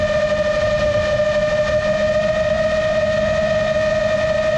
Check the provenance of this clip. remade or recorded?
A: recorded